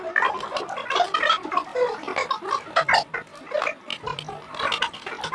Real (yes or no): yes